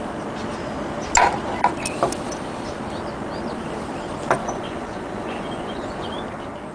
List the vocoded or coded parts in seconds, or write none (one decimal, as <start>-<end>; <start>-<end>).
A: 4.4-6.1